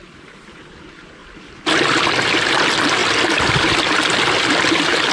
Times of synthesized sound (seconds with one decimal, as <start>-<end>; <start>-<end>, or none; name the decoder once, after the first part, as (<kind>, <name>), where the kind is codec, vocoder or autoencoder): 3.0-5.1 (vocoder, BigVGAN v2)